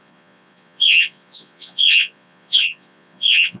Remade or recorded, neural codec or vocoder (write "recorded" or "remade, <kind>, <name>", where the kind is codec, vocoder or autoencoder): remade, vocoder, Vocos